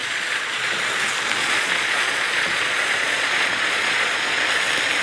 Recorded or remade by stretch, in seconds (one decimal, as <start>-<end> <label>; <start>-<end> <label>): 0.0-0.8 remade; 0.8-1.4 recorded; 1.4-4.4 remade; 4.4-5.0 recorded